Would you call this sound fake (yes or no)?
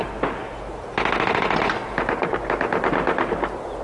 no